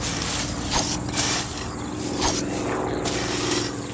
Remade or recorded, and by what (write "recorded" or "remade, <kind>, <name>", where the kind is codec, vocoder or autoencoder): recorded